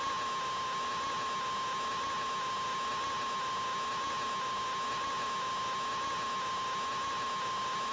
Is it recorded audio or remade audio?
recorded